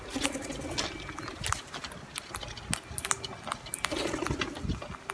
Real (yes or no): yes